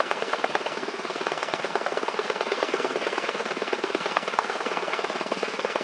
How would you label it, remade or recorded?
remade